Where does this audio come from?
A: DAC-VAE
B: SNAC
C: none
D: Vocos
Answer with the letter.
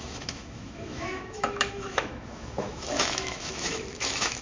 A